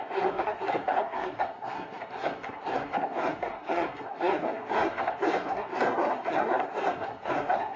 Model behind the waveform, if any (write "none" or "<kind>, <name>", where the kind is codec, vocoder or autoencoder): codec, SNAC